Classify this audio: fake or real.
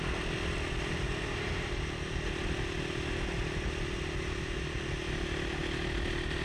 real